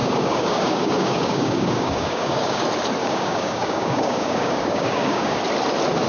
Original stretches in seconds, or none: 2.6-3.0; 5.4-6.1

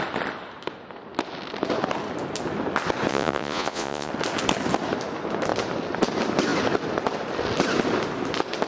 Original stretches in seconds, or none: 0.0-3.1; 4.1-8.7

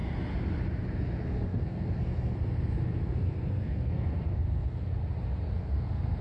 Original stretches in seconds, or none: 0.0-1.2; 4.9-5.6